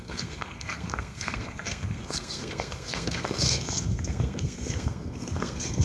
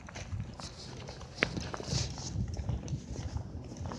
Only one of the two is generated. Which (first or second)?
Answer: first